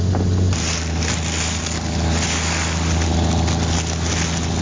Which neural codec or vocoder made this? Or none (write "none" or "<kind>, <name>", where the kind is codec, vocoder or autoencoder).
none